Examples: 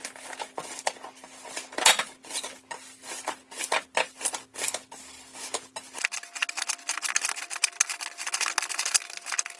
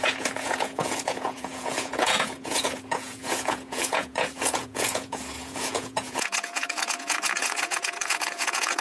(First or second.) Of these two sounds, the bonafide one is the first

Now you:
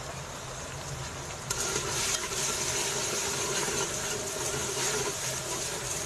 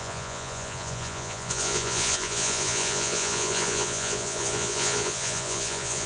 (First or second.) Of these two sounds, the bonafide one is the first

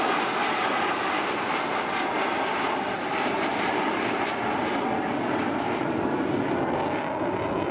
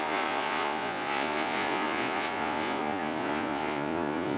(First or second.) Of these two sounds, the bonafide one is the first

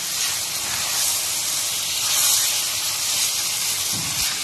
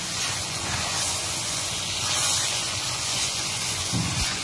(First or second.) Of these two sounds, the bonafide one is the first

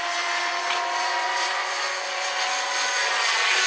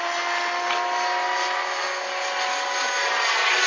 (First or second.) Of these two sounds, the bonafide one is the second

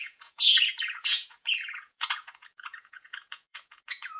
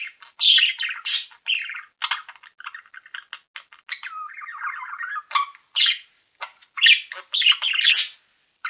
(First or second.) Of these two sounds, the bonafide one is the second